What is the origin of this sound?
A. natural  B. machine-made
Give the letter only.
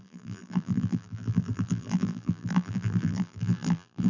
B